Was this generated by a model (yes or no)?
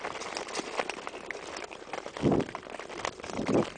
no